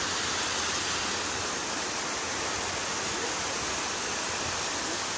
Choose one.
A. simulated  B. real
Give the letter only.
B